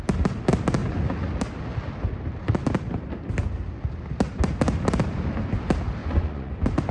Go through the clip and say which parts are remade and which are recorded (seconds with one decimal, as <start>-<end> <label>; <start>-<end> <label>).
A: 0.0-6.0 recorded; 6.0-6.5 remade; 6.5-6.9 recorded